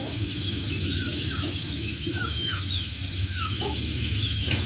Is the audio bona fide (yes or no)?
no